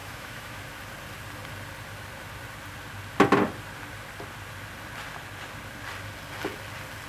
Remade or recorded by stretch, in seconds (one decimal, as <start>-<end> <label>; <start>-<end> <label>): 0.0-0.6 remade; 0.6-7.1 recorded